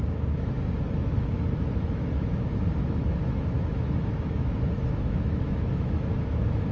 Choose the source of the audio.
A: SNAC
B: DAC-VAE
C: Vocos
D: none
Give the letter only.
B